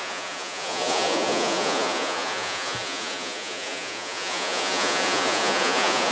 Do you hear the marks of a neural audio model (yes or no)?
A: yes